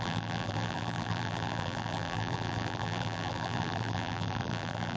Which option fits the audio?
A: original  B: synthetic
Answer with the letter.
B